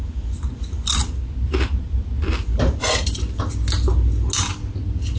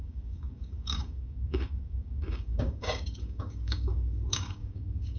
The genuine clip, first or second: first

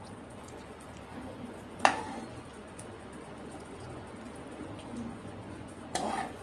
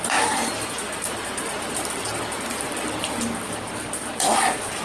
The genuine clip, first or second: second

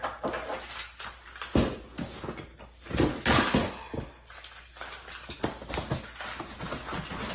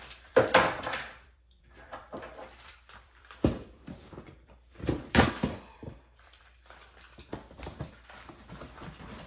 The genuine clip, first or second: first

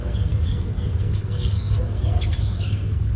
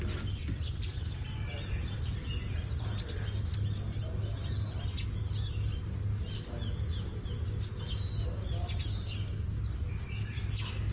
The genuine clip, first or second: second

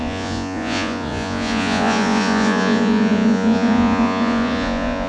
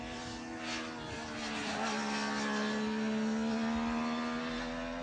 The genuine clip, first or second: second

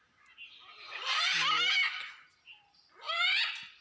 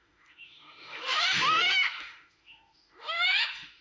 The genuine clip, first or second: first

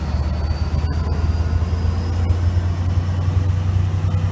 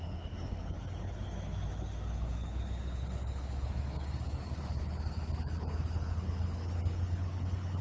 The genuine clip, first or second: first